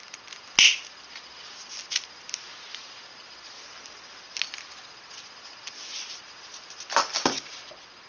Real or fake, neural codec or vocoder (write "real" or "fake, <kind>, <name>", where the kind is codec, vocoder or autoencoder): real